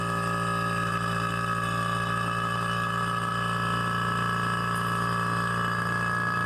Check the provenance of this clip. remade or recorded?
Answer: recorded